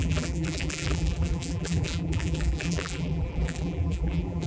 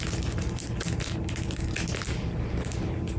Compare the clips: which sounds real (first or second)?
second